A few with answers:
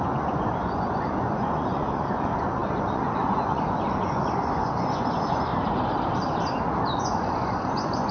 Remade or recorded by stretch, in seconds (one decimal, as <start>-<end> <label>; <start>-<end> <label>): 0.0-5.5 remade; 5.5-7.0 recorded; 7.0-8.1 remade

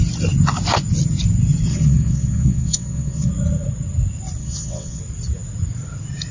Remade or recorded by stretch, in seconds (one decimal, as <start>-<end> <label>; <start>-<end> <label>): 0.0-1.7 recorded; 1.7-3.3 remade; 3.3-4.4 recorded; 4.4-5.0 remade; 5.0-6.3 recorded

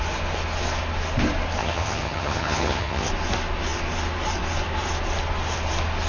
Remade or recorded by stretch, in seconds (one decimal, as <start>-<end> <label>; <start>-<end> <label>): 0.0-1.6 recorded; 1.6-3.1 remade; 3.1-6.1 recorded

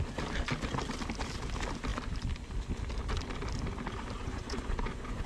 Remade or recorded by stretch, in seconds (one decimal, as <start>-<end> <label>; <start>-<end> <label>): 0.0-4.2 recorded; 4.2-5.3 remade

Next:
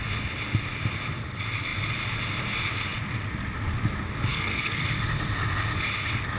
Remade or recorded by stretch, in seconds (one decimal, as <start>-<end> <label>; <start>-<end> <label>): 0.0-4.3 recorded; 4.3-4.8 remade; 4.8-6.4 recorded

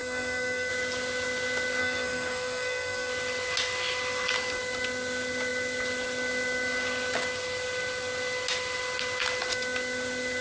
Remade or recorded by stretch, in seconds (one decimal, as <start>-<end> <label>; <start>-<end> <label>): 0.0-0.7 remade; 0.7-1.8 recorded; 1.8-3.1 remade; 3.1-10.4 recorded

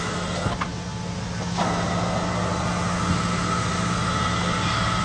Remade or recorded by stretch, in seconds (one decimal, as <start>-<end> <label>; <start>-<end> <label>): 0.0-5.0 recorded